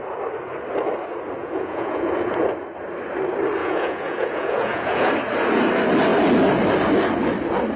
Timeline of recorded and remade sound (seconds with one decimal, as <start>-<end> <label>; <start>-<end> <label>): 0.0-1.4 recorded; 1.4-2.1 remade; 2.1-3.6 recorded; 3.6-5.1 remade; 5.1-7.8 recorded